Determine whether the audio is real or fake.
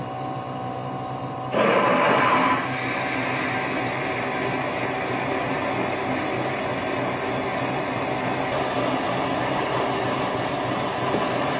real